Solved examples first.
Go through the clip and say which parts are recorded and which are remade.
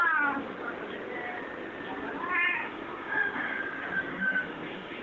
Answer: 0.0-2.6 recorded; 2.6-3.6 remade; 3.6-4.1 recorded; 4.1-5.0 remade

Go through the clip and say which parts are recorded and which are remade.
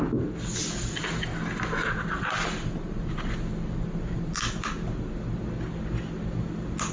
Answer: 0.0-6.9 recorded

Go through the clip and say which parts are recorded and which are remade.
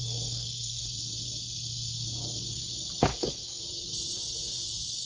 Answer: 0.0-0.8 remade; 0.8-3.1 recorded; 3.1-3.6 remade; 3.6-5.1 recorded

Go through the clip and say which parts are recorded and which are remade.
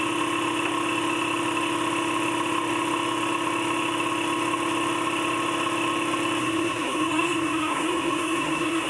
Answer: 0.0-6.4 recorded; 6.4-8.9 remade